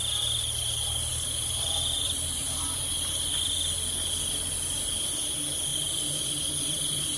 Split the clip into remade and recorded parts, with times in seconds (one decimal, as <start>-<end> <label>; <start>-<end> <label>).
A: 0.0-1.1 recorded; 1.1-2.9 remade; 2.9-5.7 recorded; 5.7-7.2 remade